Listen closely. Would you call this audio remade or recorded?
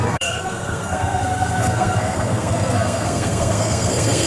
remade